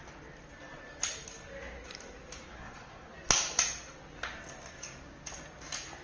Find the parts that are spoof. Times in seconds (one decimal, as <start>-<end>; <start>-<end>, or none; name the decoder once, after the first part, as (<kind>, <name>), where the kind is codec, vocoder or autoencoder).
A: 2.5-3.1 (codec, SNAC)